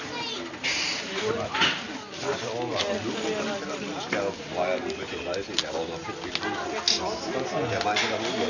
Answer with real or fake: real